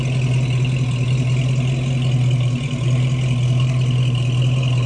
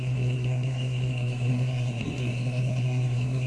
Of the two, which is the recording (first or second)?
first